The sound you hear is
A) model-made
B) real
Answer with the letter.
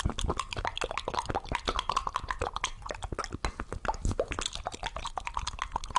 B